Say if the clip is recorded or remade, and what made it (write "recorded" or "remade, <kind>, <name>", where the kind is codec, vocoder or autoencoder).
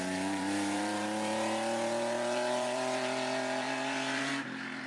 remade, vocoder, BigVGAN v2